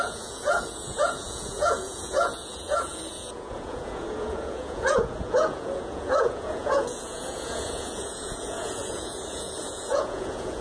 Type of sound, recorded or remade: remade